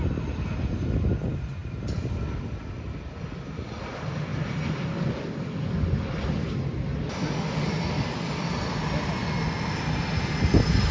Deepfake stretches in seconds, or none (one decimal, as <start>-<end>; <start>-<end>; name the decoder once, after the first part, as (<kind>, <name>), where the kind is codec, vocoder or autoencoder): none